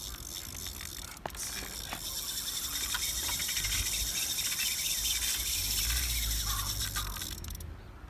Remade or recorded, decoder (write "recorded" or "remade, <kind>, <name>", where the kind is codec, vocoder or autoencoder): recorded